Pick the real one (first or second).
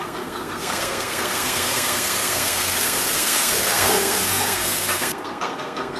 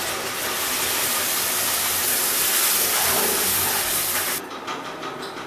second